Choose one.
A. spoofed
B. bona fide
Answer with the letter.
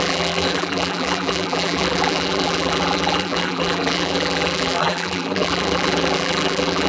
A